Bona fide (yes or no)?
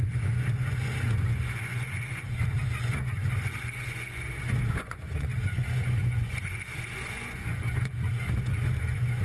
no